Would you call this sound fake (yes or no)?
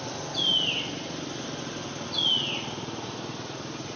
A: no